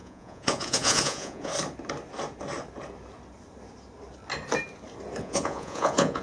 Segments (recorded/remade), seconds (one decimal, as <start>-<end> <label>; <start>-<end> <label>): 0.0-1.5 remade; 1.5-5.2 recorded; 5.2-6.2 remade